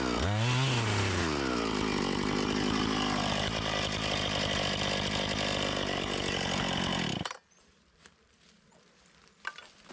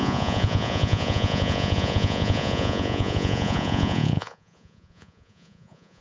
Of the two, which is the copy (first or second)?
second